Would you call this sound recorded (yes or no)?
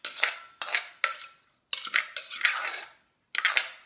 yes